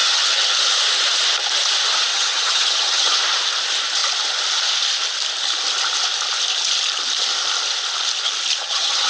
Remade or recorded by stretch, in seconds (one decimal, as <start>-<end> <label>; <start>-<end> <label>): 0.0-0.6 remade; 0.6-2.1 recorded; 2.1-3.2 remade; 3.2-8.6 recorded; 8.6-9.1 remade